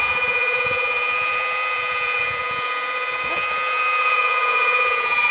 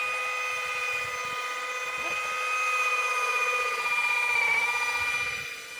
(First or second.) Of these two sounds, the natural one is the second